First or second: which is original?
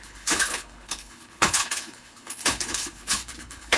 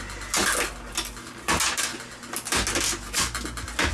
second